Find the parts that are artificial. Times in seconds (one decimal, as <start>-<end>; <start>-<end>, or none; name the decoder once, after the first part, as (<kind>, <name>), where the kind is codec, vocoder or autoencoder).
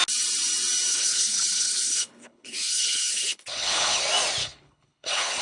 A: 0.9-4.0 (codec, HILCodec); 4.4-5.4